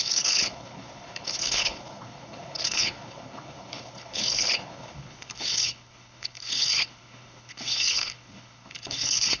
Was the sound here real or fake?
fake